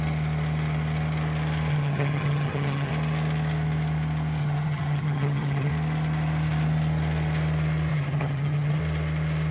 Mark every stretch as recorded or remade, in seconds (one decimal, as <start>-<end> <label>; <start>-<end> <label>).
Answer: 0.0-1.7 recorded; 1.7-2.9 remade; 2.9-4.4 recorded; 4.4-5.7 remade; 5.7-7.9 recorded; 7.9-8.8 remade; 8.8-9.5 recorded